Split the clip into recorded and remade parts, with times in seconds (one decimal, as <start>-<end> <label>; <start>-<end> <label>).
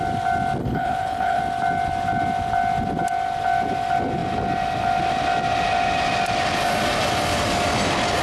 0.0-0.6 recorded; 0.6-1.4 remade; 1.4-8.2 recorded